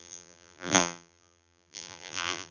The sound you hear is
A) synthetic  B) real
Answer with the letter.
A